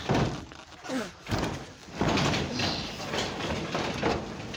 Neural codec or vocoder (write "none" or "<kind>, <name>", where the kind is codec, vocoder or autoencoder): none